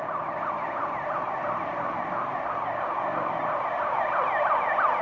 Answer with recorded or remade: recorded